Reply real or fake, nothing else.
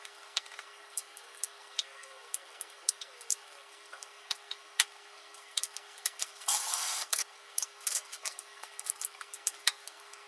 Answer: fake